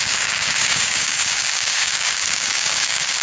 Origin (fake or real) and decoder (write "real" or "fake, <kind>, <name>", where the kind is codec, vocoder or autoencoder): fake, codec, DAC